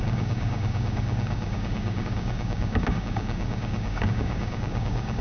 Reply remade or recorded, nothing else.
remade